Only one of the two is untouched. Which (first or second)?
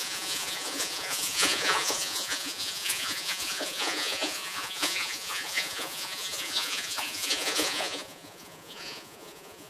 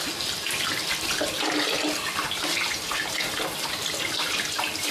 second